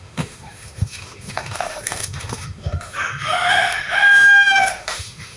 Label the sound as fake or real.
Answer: fake